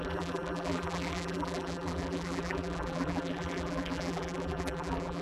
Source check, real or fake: fake